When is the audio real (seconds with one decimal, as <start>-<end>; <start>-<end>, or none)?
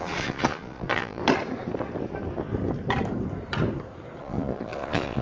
1.2-4.2